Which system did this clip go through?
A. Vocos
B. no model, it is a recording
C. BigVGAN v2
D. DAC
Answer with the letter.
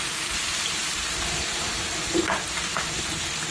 B